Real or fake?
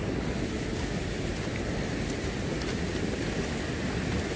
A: real